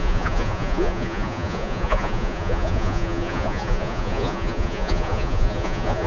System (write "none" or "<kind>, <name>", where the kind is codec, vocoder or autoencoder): vocoder, Vocos